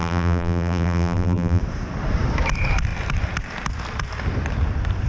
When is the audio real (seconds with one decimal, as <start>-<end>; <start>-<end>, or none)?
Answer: 1.6-5.1